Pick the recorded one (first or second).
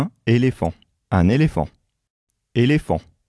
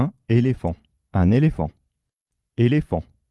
first